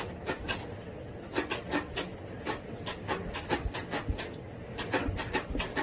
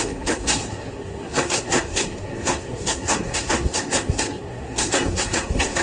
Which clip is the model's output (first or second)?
second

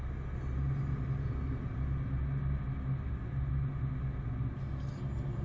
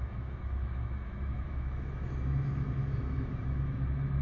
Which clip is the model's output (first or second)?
second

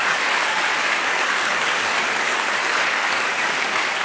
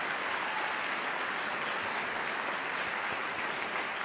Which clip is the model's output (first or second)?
first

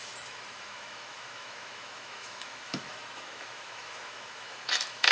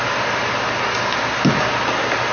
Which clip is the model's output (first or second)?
first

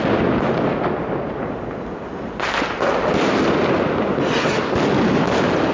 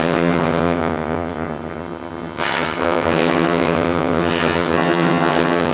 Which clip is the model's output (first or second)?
second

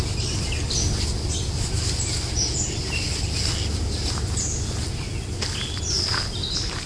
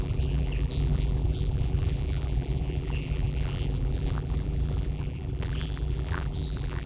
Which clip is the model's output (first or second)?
second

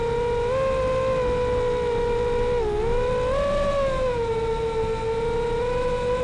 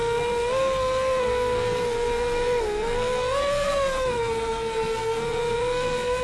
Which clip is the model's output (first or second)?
second